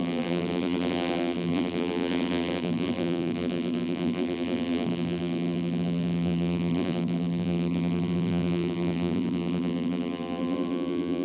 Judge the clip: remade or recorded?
remade